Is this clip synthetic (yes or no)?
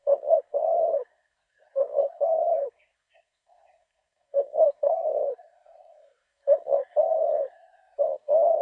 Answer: yes